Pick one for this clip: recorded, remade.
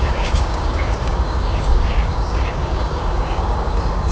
remade